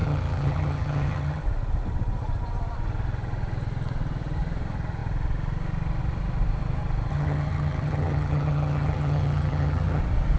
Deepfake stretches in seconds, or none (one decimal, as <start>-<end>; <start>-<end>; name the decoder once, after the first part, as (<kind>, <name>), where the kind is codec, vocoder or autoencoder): 0.0-1.4 (vocoder, HiFi-GAN); 7.1-10.0